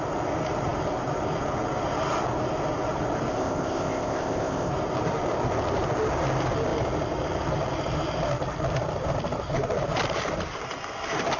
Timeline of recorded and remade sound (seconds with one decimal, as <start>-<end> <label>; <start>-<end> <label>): 0.0-3.3 recorded; 3.3-4.7 remade; 4.7-11.4 recorded